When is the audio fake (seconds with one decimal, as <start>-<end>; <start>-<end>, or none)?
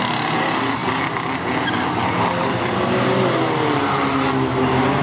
none